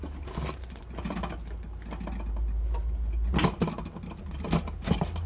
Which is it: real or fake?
real